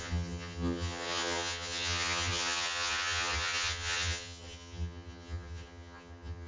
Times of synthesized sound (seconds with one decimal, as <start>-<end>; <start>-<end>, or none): 0.0-6.5